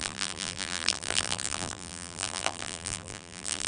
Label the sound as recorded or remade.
remade